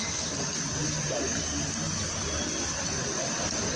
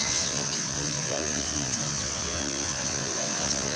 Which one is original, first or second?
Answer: first